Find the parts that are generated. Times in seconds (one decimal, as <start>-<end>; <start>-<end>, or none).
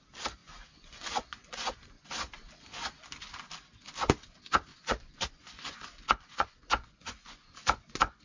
0.4-2.3; 4.7-8.2